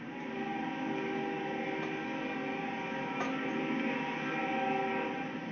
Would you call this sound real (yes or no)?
yes